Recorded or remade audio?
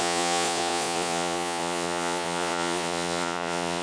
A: remade